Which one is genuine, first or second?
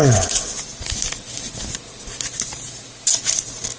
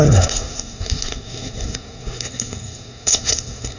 first